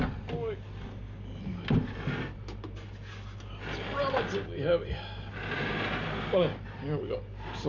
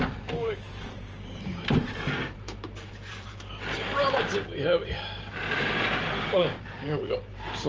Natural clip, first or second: first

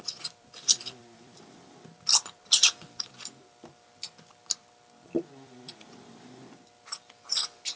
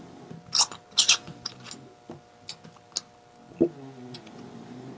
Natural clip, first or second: second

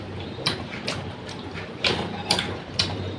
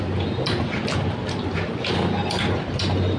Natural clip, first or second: second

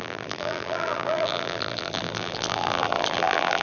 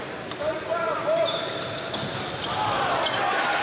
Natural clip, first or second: second